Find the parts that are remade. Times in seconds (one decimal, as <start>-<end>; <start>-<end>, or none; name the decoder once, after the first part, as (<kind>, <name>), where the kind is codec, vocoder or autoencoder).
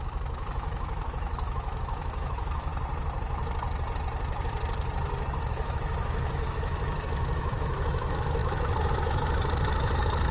0.0-2.7 (autoencoder, DAC-VAE); 5.5-10.3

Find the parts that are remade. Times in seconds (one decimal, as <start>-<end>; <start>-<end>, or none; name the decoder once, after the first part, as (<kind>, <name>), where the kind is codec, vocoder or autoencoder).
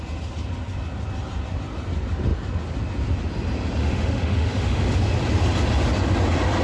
3.8-5.0 (autoencoder, DAC-VAE)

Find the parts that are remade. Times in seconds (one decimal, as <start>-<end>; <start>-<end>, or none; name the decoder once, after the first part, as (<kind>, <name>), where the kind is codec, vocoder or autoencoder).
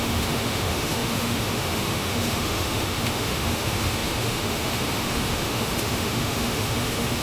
0.0-7.2 (autoencoder, DAC-VAE)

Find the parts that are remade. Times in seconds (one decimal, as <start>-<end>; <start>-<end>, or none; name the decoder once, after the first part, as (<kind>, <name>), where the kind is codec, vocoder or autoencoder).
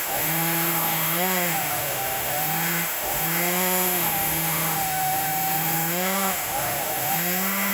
0.0-7.7 (autoencoder, DAC-VAE)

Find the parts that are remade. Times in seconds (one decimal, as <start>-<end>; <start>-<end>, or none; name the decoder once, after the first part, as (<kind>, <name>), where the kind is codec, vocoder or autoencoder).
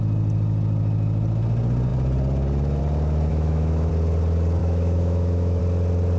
3.3-3.9 (autoencoder, DAC-VAE); 4.6-5.6